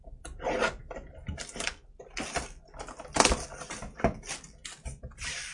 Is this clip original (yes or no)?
yes